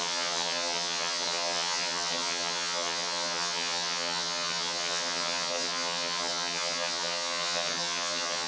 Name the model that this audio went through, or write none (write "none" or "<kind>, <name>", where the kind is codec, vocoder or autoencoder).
vocoder, HiFi-GAN